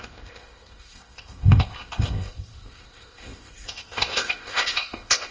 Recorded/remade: remade